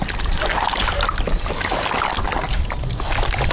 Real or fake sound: real